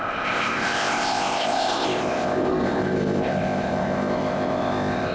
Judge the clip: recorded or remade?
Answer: remade